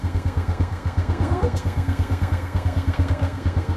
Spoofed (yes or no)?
yes